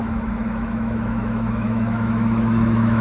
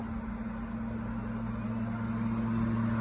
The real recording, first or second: second